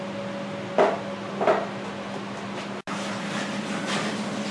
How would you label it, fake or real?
real